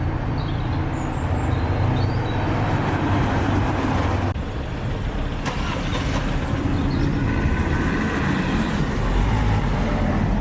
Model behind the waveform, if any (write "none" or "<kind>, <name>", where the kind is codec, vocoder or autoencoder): none